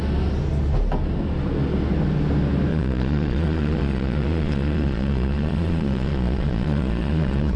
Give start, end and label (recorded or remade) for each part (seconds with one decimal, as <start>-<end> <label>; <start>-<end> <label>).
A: 0.0-2.7 recorded; 2.7-7.6 remade